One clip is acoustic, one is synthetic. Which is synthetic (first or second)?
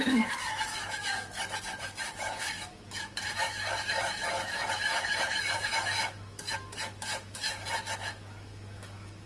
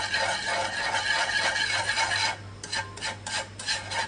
first